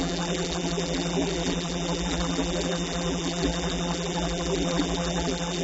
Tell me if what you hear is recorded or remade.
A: remade